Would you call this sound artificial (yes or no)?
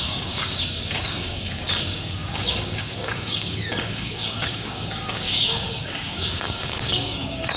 yes